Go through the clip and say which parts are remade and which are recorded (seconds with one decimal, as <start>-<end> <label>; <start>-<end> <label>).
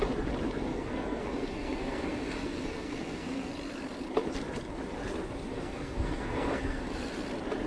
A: 0.0-0.7 recorded; 0.7-3.5 remade; 3.5-5.5 recorded; 5.5-6.9 remade; 6.9-7.7 recorded